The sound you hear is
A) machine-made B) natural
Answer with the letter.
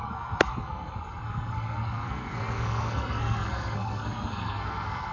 A